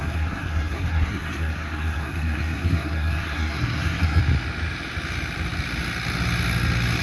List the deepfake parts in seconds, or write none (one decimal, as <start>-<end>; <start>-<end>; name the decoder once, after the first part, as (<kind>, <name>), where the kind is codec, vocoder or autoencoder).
0.0-4.2 (codec, SNAC)